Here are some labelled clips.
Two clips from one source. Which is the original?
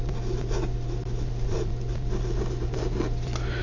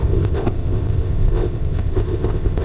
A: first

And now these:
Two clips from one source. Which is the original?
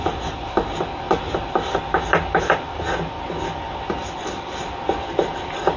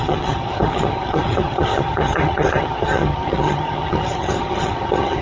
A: first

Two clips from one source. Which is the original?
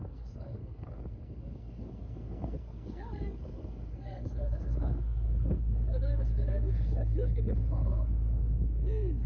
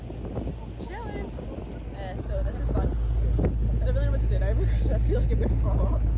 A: second